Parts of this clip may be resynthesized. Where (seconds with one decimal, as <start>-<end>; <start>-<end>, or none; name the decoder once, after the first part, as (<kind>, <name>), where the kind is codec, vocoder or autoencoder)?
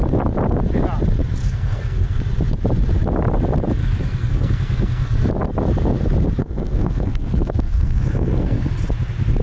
1.4-2.2 (codec, SNAC); 3.8-5.3; 6.4-8.7